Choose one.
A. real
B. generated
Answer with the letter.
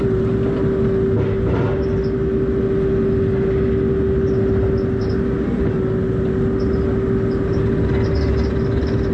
A